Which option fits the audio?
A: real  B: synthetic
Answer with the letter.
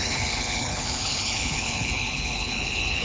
B